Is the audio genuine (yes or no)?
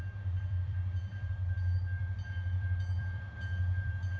no